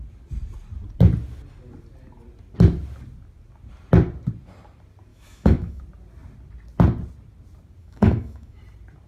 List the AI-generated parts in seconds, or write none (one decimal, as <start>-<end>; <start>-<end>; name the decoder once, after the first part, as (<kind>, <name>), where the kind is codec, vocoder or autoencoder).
5.1-5.8 (autoencoder, DAC-VAE); 7.8-8.6